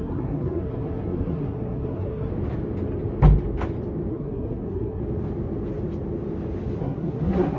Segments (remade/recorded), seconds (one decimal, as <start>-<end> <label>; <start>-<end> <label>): 0.0-2.3 remade; 2.3-4.1 recorded; 4.1-5.0 remade; 5.0-6.8 recorded; 6.8-7.6 remade